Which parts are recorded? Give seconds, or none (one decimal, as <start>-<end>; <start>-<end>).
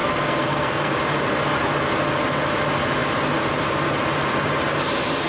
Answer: 0.9-5.3